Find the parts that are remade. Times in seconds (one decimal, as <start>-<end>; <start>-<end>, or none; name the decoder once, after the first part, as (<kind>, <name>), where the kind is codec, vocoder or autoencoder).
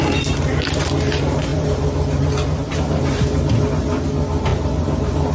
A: 2.7-3.4 (vocoder, BigVGAN v2); 4.5-5.3